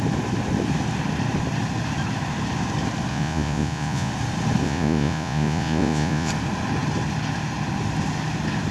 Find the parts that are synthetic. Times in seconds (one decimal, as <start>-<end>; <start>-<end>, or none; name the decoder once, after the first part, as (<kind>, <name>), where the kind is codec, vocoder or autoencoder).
3.1-4.1 (vocoder, Vocos); 4.6-6.3